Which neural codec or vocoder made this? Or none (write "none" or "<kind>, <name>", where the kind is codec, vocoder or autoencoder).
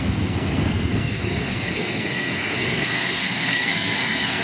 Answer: codec, SNAC